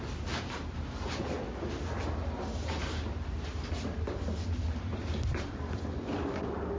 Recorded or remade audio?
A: recorded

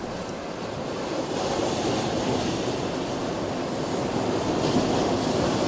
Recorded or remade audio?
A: recorded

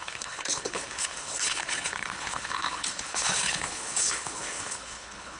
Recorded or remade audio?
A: remade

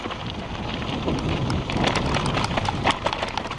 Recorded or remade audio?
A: recorded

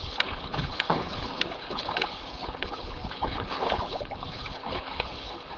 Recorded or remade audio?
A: remade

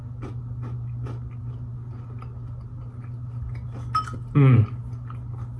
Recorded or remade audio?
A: recorded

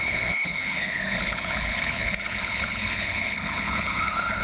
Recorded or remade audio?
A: remade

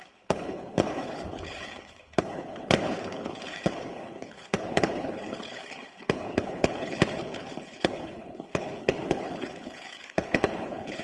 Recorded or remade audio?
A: remade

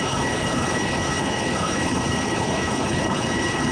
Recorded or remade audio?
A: remade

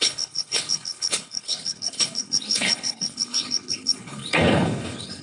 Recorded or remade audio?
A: remade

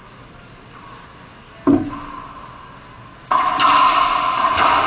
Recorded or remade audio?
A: recorded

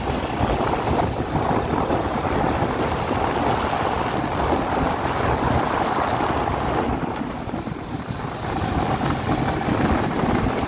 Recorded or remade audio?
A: recorded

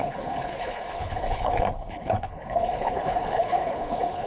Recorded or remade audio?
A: remade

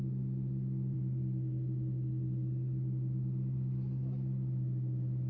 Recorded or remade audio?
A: recorded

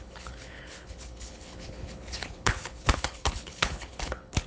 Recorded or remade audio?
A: remade